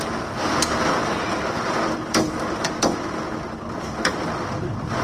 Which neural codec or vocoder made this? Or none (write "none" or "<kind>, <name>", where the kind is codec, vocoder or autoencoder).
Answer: vocoder, BigVGAN v2